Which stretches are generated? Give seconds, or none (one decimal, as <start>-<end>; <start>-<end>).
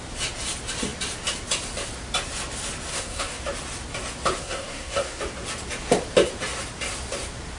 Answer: 2.9-3.4; 4.4-5.2